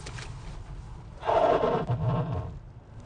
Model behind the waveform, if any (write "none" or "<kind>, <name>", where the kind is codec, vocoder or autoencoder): none